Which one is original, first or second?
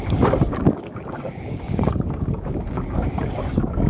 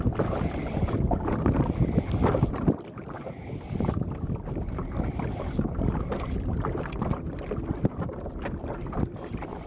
second